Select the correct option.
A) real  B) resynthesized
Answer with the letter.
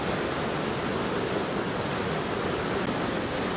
A